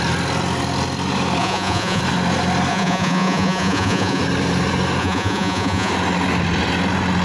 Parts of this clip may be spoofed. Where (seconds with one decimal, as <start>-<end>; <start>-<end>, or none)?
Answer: 1.4-2.0; 2.7-4.2; 5.0-5.9